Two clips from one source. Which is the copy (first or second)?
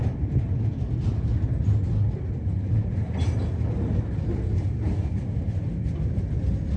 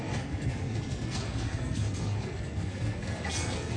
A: second